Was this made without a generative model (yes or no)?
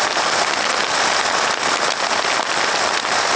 yes